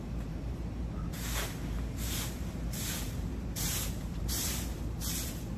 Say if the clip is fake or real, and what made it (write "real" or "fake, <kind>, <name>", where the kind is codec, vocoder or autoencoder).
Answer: fake, vocoder, BigVGAN v2